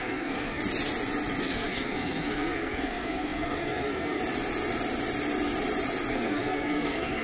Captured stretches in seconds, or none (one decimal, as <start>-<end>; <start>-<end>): 0.6-1.4; 4.2-6.1